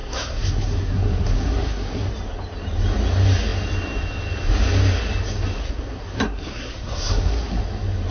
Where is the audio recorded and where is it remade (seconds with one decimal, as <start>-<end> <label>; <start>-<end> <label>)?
0.0-2.1 remade; 2.1-5.6 recorded; 5.6-7.6 remade; 7.6-8.1 recorded